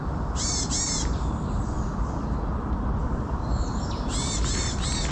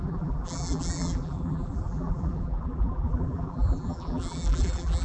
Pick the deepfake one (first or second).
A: second